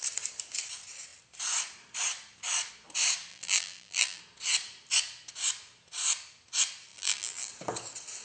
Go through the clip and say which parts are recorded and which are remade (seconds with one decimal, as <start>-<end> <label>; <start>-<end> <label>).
0.0-3.3 recorded; 3.3-4.2 remade; 4.2-6.9 recorded; 6.9-7.5 remade; 7.5-8.2 recorded